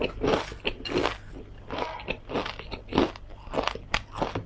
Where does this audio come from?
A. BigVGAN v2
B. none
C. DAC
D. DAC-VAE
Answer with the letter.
B